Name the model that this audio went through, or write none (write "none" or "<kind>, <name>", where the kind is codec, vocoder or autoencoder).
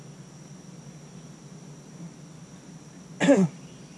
none